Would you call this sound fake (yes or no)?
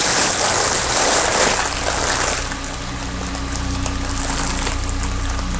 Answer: no